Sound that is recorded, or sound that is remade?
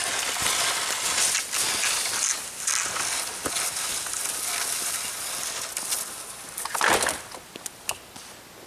recorded